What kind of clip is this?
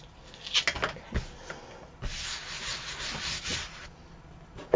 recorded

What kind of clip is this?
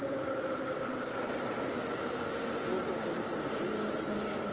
recorded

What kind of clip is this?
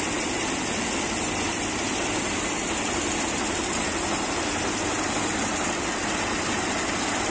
recorded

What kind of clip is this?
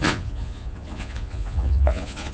remade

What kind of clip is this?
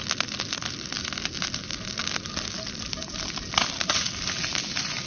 recorded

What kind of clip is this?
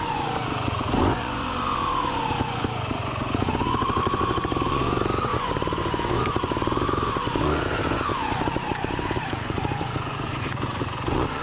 remade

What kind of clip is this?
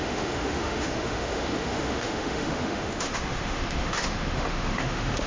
remade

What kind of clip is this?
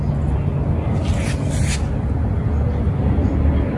recorded